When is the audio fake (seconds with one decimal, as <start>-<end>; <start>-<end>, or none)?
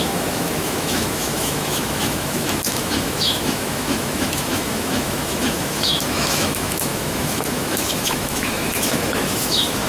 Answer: 0.0-9.9